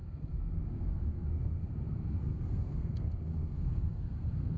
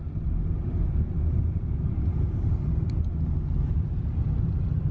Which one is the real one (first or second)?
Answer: second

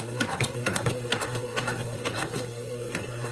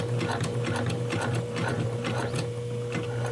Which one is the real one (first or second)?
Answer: second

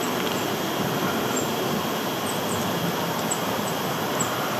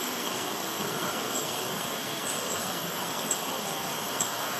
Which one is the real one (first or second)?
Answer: first